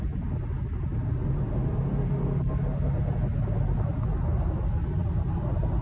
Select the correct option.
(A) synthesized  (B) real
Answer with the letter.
B